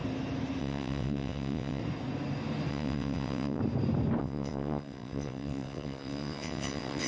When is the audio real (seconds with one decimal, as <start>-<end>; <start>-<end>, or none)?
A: 0.0-0.6; 1.8-2.7; 3.6-4.2